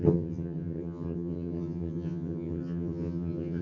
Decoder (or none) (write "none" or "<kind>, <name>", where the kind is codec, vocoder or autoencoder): vocoder, HiFi-GAN